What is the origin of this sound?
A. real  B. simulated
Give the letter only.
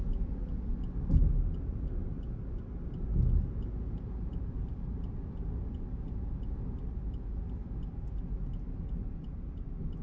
A